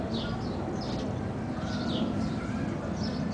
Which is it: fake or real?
real